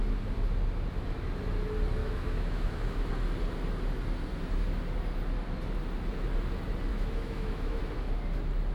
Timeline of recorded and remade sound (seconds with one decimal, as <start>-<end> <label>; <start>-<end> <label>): 0.0-2.0 recorded; 2.0-3.1 remade; 3.1-6.9 recorded; 6.9-7.8 remade; 7.8-8.7 recorded

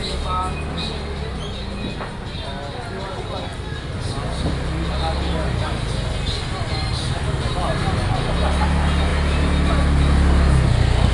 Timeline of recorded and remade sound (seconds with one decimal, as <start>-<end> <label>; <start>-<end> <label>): 0.0-11.1 recorded

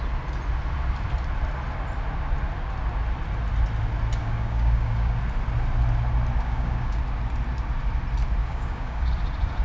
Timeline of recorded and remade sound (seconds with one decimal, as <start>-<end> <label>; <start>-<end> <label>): 0.0-4.2 recorded; 4.2-5.2 remade; 5.2-6.4 recorded; 6.4-7.0 remade; 7.0-8.4 recorded; 8.4-9.1 remade; 9.1-9.6 recorded

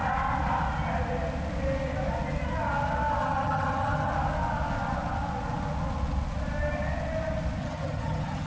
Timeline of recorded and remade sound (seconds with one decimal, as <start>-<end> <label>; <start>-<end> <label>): 0.0-3.2 recorded; 3.2-4.1 remade; 4.1-7.6 recorded; 7.6-8.5 remade